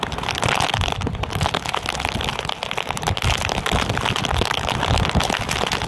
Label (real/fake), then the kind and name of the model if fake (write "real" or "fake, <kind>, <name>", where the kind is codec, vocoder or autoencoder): real